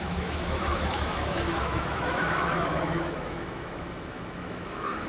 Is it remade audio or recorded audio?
remade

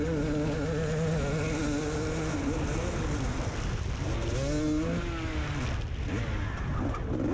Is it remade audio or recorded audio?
recorded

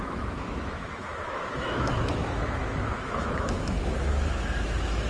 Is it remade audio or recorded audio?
remade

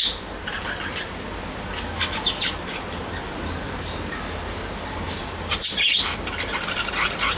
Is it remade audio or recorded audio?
recorded